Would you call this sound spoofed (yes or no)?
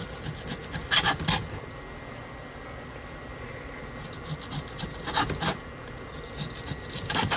yes